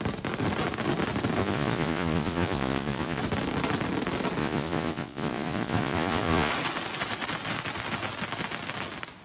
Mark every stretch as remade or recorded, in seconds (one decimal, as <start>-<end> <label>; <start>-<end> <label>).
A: 0.0-1.4 recorded; 1.4-3.2 remade; 3.2-4.4 recorded; 4.4-6.5 remade; 6.5-9.2 recorded